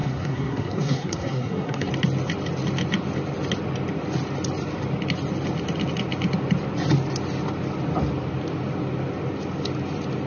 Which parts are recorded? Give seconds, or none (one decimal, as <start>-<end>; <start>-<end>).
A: 1.9-10.3